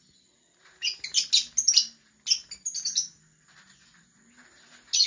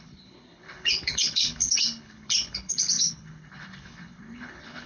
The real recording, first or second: first